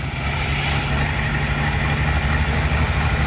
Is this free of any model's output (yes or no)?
yes